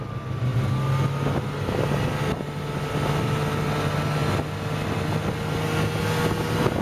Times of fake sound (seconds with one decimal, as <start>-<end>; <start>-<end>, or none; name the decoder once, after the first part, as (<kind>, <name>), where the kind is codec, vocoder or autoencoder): none